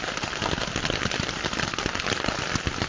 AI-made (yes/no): no